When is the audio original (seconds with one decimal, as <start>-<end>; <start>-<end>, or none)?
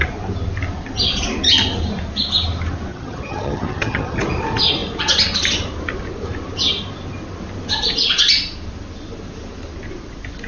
0.0-2.9; 4.2-10.5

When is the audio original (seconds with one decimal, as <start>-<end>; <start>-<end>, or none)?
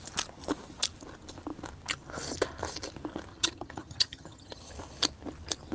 0.0-3.3; 4.7-5.7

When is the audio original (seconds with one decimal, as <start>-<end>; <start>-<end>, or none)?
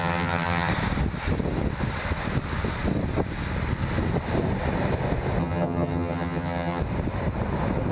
0.7-5.4; 6.8-7.9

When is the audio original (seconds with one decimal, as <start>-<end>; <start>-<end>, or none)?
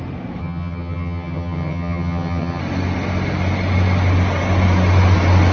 0.0-0.4; 2.6-5.5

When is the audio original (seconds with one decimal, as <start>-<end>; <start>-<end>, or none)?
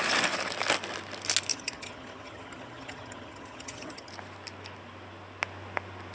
0.0-1.5; 4.1-6.1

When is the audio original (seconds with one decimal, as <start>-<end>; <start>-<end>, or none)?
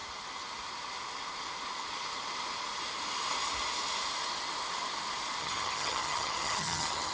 0.0-5.4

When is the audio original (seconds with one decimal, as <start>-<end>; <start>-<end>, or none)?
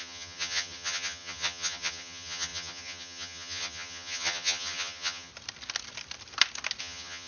5.3-6.8